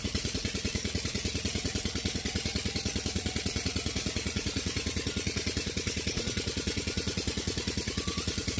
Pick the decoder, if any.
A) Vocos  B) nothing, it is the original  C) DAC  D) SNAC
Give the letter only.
A